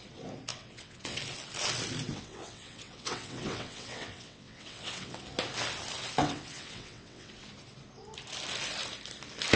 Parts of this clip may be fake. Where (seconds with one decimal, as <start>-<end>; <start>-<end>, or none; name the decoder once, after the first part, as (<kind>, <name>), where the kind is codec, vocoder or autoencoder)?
0.5-1.2 (vocoder, WaveNeXt); 2.1-5.2; 6.2-7.3